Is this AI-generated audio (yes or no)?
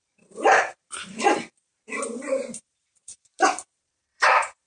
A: yes